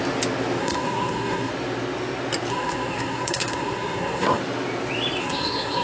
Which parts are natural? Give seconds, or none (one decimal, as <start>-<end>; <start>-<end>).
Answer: 0.0-0.6; 1.5-2.5; 4.4-5.2